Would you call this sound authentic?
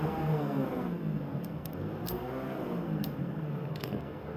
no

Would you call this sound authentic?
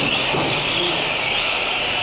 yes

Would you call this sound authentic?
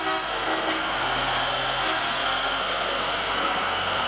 no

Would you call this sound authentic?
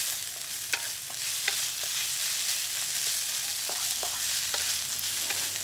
yes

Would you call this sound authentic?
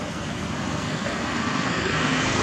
no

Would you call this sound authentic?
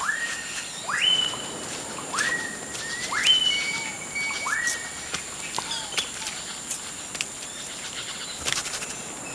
yes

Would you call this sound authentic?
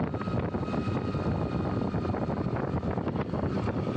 yes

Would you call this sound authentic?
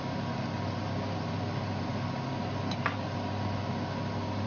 yes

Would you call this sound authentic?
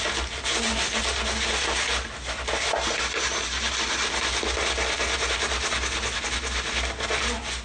yes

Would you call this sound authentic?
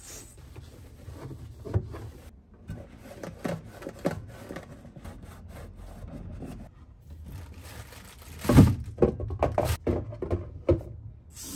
yes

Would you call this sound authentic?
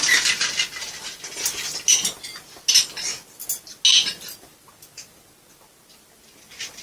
yes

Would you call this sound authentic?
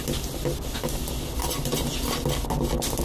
yes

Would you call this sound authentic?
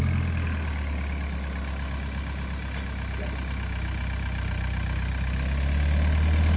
yes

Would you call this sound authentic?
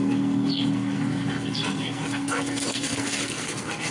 no